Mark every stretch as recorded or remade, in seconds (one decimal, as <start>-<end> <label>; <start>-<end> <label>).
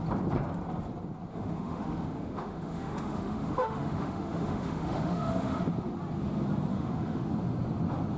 0.0-1.3 recorded; 1.3-5.6 remade; 5.6-6.7 recorded; 6.7-7.3 remade; 7.3-8.2 recorded